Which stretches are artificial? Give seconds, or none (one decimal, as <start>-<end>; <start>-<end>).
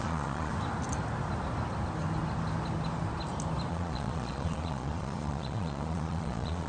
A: 0.0-0.5; 3.7-6.7